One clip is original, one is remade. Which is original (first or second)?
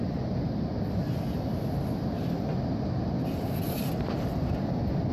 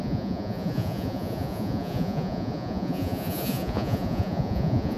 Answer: first